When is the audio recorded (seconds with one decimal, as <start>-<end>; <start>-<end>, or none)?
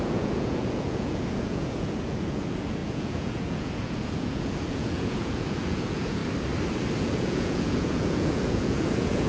6.2-7.0